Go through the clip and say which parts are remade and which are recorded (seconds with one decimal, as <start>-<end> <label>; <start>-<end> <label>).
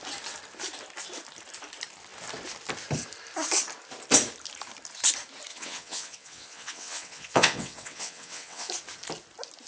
0.0-5.5 recorded; 5.5-8.7 remade; 8.7-9.7 recorded